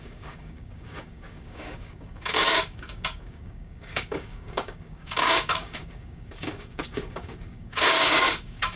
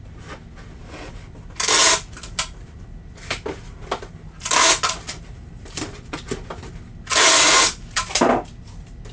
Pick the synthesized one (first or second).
first